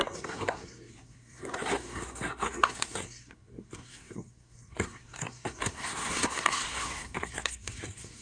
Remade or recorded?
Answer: remade